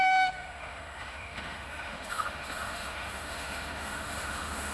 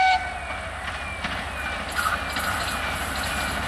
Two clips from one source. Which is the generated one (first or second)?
first